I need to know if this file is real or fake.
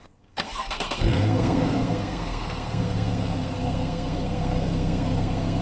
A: fake